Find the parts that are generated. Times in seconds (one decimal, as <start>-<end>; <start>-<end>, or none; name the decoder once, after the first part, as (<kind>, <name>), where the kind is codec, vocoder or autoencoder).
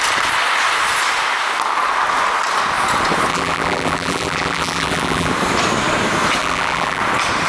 3.3-5.3 (vocoder, BigVGAN v2); 6.4-7.0